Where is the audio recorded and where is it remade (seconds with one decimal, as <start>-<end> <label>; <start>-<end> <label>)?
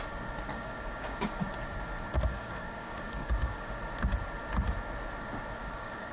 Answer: 0.0-0.5 recorded; 0.5-1.5 remade; 1.5-2.3 recorded; 2.3-3.8 remade; 3.8-5.6 recorded; 5.6-6.1 remade